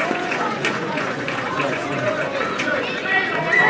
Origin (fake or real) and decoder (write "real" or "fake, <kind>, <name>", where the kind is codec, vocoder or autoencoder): fake, vocoder, Vocos